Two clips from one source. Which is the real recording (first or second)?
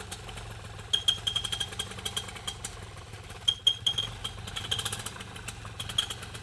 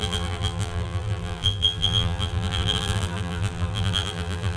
first